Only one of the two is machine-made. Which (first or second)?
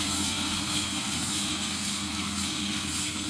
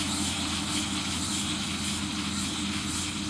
first